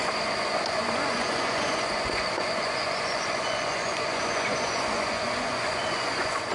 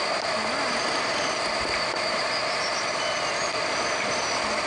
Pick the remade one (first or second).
first